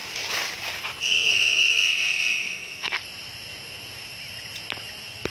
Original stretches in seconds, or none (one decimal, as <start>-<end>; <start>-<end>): 0.0-1.0; 3.0-5.3